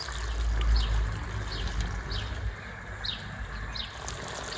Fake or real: real